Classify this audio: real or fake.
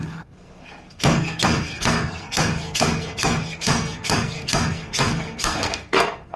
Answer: fake